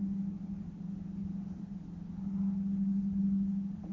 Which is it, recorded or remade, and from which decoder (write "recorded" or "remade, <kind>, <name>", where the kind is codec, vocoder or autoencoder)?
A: recorded